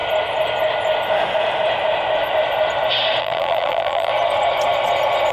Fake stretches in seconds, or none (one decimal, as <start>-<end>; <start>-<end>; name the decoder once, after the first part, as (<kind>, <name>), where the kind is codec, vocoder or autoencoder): 3.2-4.1 (vocoder, BigVGAN v2)